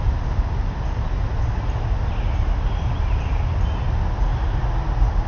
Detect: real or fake real